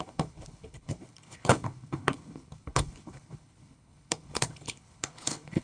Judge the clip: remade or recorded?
remade